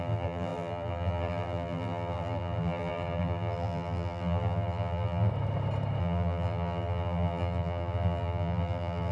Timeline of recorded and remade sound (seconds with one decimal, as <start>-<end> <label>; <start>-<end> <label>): 0.0-5.3 remade; 5.3-6.0 recorded; 6.0-9.1 remade